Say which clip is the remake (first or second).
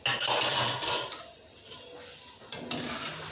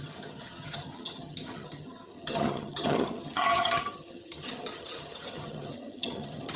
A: second